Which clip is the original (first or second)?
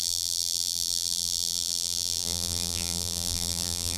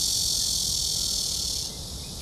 second